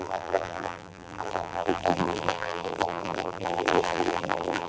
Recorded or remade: remade